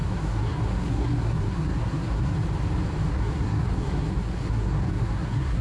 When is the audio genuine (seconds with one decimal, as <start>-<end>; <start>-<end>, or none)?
2.3-3.1